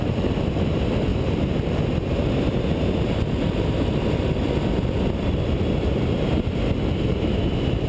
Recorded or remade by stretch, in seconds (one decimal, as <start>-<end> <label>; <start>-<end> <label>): 0.0-7.9 recorded